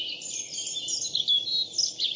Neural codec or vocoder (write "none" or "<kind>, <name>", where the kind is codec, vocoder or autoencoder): none